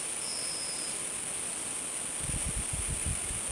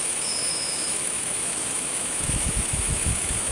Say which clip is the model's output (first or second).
second